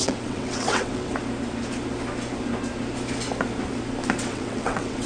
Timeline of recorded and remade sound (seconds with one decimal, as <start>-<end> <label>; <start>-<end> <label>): 0.0-1.1 remade; 1.1-4.2 recorded; 4.2-5.1 remade